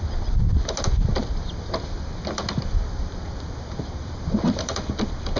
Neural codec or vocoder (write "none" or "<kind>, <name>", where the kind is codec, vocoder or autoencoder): none